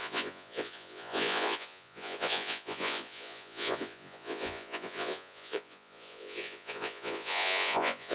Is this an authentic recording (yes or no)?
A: no